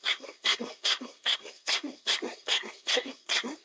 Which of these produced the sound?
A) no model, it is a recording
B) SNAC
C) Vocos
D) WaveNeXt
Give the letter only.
B